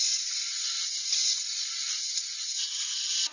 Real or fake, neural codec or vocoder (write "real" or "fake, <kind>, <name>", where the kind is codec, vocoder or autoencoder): real